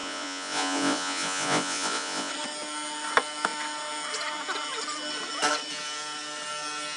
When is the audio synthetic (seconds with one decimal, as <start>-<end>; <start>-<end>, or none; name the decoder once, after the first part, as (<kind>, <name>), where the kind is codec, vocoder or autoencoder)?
0.0-2.3 (vocoder, Vocos)